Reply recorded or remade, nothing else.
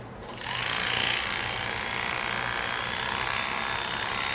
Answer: recorded